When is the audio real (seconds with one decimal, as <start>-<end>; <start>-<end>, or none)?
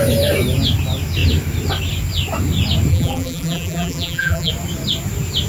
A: 0.0-2.9; 4.5-5.5